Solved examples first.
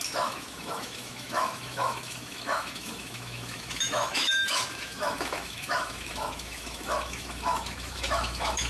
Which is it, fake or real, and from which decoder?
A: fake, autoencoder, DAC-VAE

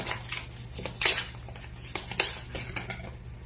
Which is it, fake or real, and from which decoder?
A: real